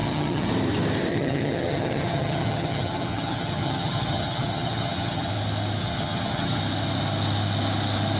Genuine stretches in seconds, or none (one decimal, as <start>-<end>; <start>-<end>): 0.5-1.1; 5.3-5.8; 6.6-8.2